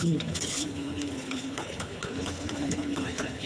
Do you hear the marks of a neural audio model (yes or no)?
yes